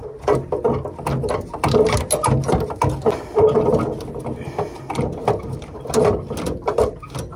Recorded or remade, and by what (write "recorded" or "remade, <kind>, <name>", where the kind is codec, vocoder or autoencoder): recorded